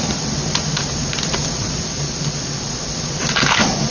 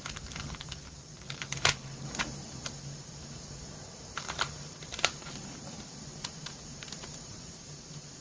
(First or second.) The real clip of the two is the first